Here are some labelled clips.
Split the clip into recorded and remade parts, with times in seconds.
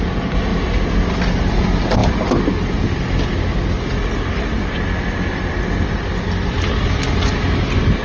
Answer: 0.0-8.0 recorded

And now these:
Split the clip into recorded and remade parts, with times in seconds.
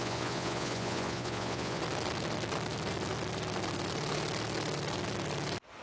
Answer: 0.0-1.8 remade; 1.8-5.8 recorded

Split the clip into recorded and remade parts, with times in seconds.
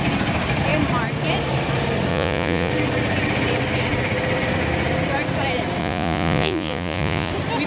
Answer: 0.0-2.1 recorded; 2.1-2.7 remade; 2.7-5.8 recorded; 5.8-7.3 remade; 7.3-7.7 recorded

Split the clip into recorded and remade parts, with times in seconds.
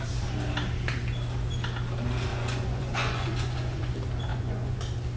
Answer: 0.0-2.3 recorded; 2.3-3.9 remade; 3.9-4.3 recorded; 4.3-4.8 remade; 4.8-5.2 recorded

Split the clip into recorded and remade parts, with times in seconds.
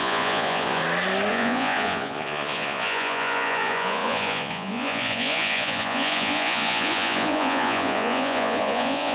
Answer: 0.0-0.8 remade; 0.8-1.3 recorded; 1.3-9.1 remade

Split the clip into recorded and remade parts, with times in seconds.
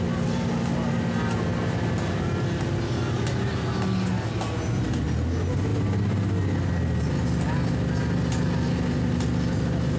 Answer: 0.0-10.0 recorded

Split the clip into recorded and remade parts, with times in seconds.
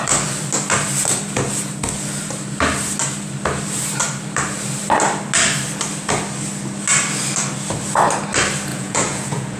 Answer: 0.0-8.7 recorded; 8.7-9.6 remade